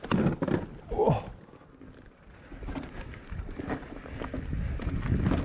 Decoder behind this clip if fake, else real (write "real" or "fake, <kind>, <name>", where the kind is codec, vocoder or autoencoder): real